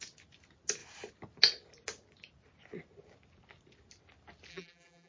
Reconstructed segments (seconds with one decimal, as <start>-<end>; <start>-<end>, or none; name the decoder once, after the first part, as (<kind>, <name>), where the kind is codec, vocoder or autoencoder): 4.5-5.1 (vocoder, BigVGAN v2)